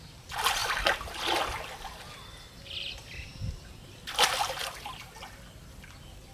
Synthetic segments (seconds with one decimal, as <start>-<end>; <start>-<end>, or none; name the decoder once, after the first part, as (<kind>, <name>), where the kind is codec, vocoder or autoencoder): none